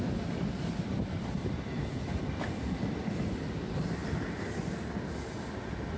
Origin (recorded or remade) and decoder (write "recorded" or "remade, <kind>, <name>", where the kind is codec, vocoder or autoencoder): recorded